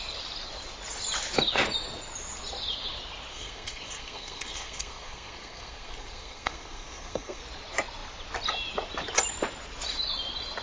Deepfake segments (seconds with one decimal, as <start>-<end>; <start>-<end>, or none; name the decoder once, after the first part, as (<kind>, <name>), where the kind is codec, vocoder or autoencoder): 3.3-7.4 (codec, SNAC)